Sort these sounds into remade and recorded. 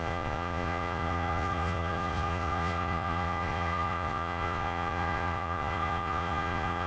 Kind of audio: remade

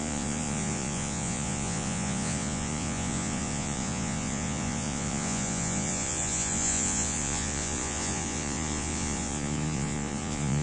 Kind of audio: remade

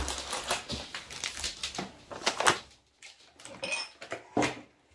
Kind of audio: recorded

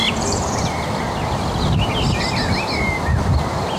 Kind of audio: recorded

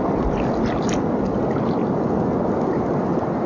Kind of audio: recorded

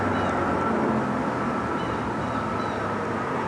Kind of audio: recorded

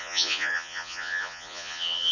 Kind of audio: remade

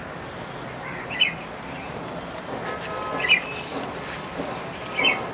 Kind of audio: recorded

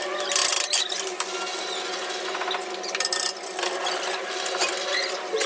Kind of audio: recorded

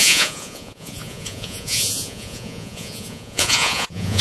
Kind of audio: remade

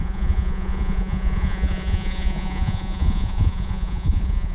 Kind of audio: remade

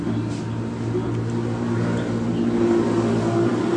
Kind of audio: recorded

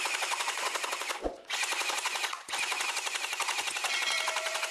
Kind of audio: remade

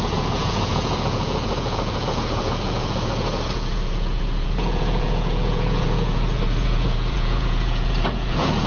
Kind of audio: remade